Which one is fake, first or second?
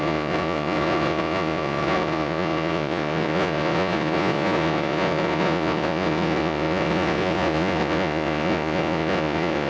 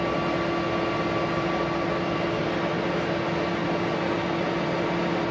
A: first